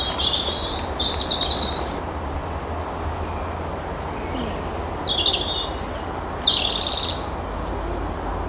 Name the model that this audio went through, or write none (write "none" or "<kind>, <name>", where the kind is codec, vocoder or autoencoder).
none